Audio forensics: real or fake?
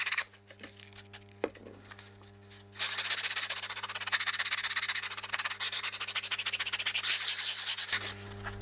real